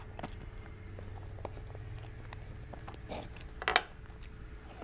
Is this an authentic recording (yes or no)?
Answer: yes